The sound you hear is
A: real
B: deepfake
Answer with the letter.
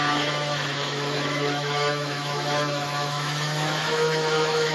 B